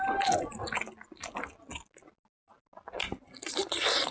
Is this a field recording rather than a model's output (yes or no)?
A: yes